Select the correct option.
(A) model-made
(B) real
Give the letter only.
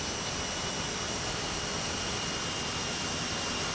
B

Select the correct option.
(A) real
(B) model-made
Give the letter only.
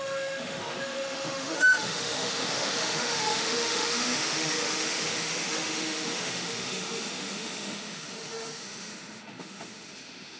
B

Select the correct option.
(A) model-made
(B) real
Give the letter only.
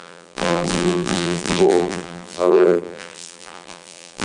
A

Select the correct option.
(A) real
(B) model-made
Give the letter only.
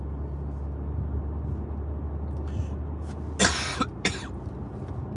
A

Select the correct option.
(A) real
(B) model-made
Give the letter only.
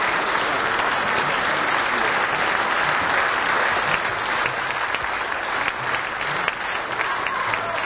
A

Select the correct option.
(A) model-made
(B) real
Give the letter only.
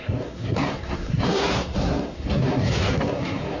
A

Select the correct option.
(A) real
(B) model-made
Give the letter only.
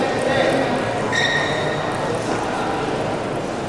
A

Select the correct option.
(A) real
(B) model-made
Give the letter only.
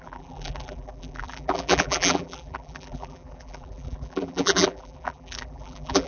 B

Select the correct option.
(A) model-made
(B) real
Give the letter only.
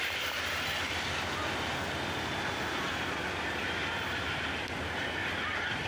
B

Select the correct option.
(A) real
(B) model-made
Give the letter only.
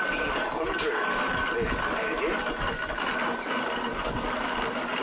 A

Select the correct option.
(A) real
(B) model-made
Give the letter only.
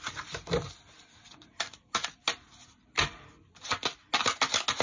A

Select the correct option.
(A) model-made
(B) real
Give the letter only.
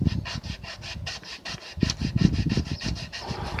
B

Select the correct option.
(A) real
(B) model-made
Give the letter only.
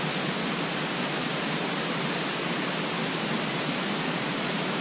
B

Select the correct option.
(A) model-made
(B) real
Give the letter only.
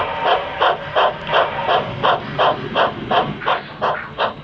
B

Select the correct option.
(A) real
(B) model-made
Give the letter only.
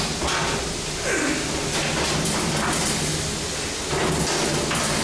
A